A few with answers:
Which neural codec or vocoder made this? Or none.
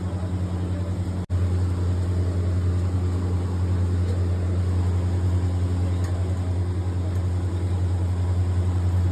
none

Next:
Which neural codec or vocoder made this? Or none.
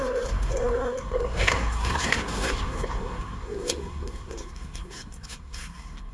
codec, SNAC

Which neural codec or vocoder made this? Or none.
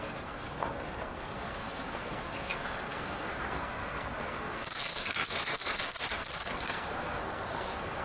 codec, SNAC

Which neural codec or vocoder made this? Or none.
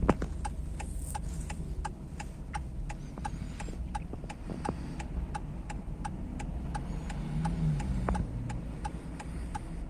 none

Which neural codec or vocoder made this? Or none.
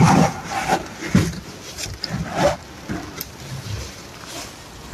none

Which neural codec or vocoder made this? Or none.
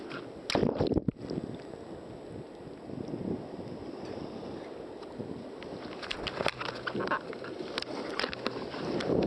none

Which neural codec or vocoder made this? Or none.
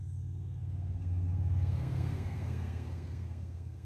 codec, SNAC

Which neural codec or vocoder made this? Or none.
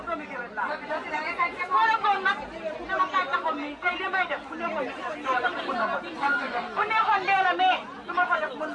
none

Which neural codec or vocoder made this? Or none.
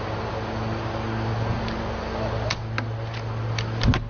none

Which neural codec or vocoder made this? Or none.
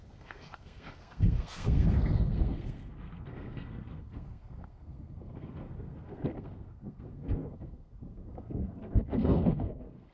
codec, SNAC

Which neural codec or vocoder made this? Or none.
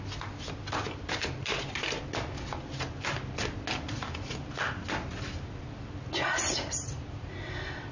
none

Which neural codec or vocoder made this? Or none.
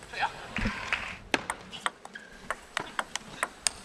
none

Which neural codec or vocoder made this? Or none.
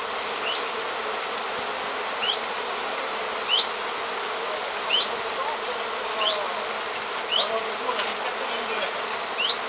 none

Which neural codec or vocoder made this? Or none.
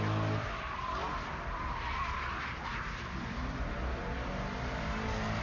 none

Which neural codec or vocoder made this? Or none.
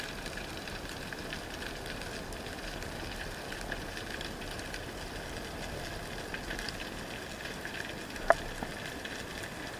none